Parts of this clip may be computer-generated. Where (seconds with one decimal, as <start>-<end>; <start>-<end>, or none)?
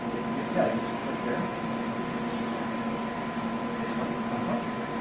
none